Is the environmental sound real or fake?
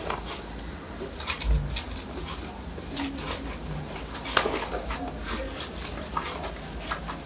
real